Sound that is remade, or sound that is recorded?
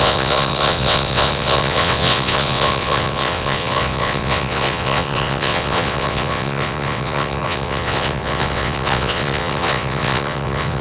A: remade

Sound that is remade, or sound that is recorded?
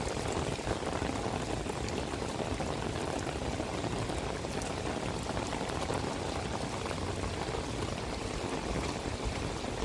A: recorded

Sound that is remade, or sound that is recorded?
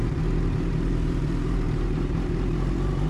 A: remade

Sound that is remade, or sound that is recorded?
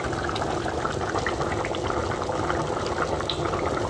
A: recorded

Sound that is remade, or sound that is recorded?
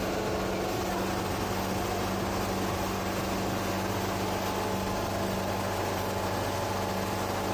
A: recorded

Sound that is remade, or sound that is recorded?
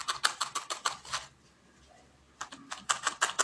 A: recorded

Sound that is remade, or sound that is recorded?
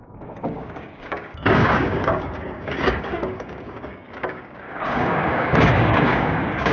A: remade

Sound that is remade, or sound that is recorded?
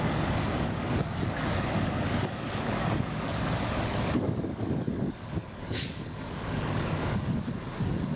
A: remade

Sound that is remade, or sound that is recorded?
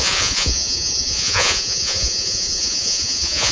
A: remade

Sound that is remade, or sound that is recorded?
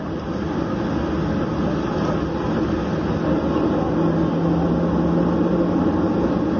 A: recorded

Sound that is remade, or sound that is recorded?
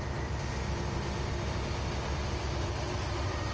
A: recorded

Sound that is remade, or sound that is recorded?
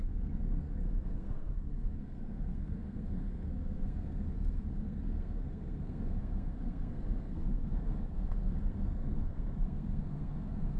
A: remade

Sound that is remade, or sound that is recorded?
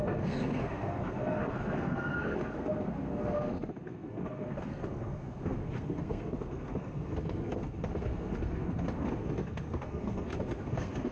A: remade